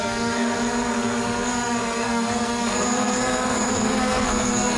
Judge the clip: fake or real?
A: fake